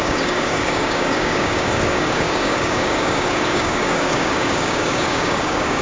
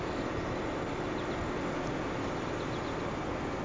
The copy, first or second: first